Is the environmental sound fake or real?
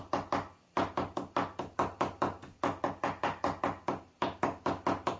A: real